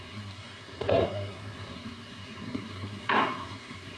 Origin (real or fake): fake